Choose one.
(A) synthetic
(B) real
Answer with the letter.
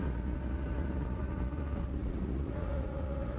A